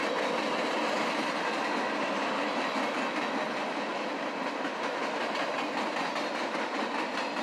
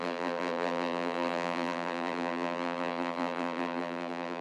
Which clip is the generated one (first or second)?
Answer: second